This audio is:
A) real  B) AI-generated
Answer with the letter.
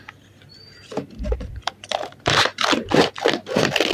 B